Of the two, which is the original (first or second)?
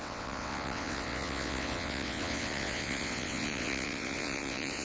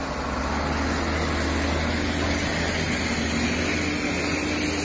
second